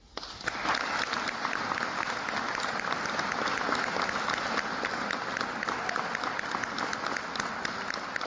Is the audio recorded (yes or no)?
yes